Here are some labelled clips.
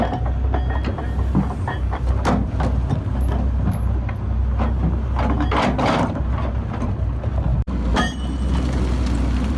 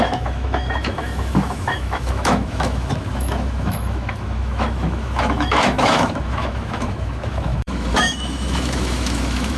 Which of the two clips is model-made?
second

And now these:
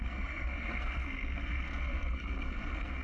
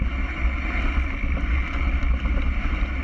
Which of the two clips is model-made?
first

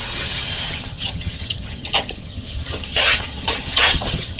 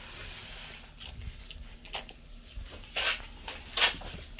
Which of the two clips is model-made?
first